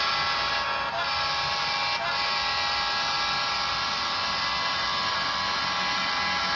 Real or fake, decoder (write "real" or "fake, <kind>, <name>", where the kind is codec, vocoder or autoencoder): real